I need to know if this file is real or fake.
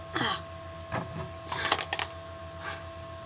real